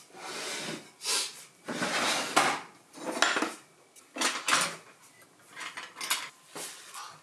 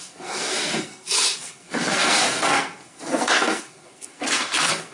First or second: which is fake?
second